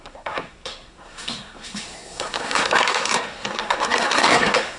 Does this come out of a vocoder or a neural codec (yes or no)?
yes